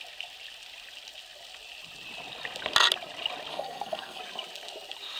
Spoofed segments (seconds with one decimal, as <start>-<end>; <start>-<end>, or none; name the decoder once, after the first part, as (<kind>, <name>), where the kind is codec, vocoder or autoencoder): 3.5-4.2 (codec, SNAC)